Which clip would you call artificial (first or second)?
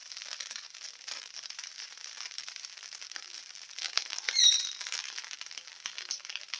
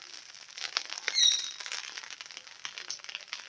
first